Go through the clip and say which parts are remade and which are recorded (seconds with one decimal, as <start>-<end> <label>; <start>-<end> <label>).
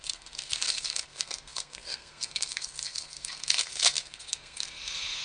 0.0-5.2 remade